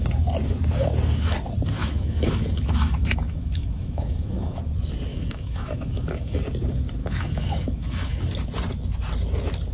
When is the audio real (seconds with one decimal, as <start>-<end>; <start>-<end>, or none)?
0.0-1.8; 4.6-5.1; 6.4-7.0; 8.2-9.7